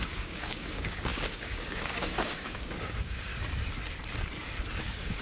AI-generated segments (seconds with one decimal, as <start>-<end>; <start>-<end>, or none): 0.0-3.3; 4.8-5.2